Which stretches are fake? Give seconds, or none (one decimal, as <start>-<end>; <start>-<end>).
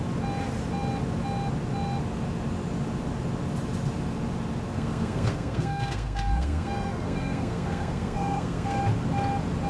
4.7-8.8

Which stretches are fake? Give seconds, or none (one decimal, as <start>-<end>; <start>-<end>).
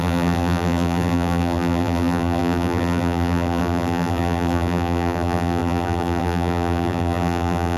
0.0-7.8